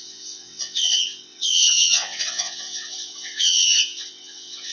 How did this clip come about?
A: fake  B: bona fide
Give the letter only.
A